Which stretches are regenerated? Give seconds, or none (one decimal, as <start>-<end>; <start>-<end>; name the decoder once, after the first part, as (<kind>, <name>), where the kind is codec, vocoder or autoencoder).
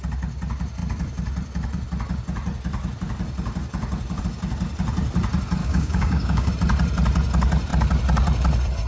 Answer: 5.6-6.5 (codec, DAC)